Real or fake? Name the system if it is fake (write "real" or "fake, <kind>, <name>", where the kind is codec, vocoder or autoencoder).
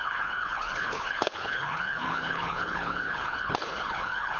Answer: fake, codec, HILCodec